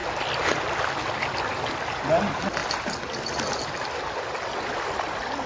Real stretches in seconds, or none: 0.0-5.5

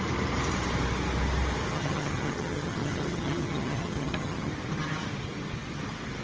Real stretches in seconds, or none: 0.0-1.7; 4.5-6.2

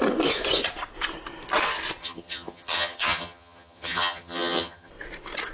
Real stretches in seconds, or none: 0.0-2.0; 4.9-5.5

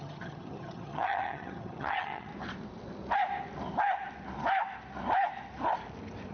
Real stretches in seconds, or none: 2.3-6.3

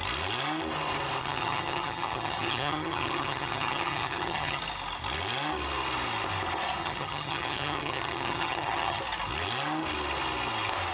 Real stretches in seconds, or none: 0.0-1.2; 4.6-6.8; 9.0-10.9

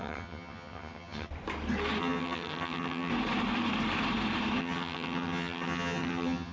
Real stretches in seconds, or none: 1.3-2.0; 3.1-4.6

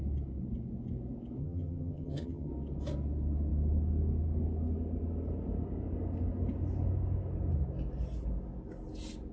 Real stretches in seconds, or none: 0.0-1.4; 2.5-9.3